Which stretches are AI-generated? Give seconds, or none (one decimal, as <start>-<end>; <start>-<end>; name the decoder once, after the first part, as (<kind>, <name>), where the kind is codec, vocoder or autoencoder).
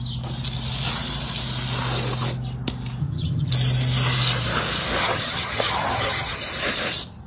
3.0-3.5 (vocoder, HiFi-GAN); 5.0-6.4